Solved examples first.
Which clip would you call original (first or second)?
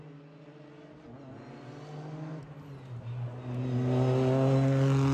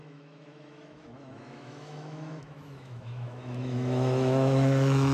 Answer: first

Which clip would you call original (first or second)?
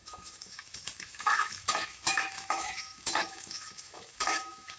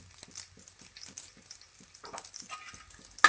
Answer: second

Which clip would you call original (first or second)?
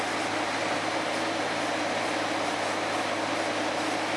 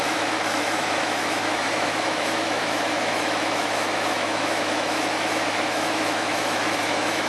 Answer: first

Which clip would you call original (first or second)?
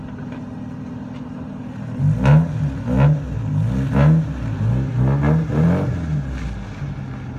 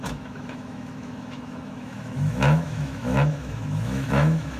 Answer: first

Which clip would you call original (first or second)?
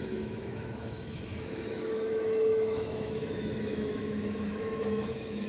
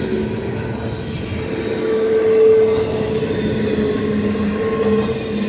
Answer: second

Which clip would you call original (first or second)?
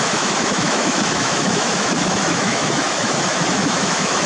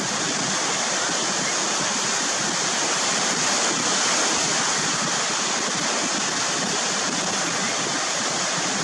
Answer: second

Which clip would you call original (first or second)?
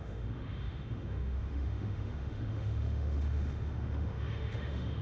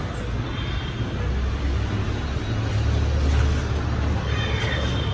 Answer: second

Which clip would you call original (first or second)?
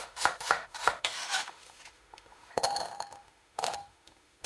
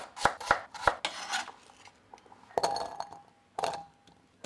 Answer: second